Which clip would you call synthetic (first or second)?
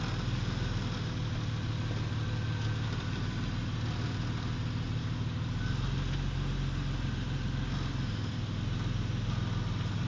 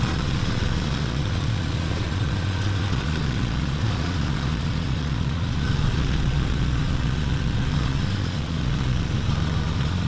second